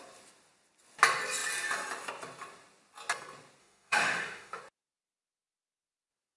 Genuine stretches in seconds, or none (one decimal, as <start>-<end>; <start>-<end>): 0.0-3.6; 4.6-6.4